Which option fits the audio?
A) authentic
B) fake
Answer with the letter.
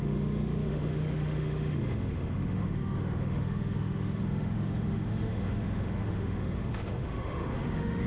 B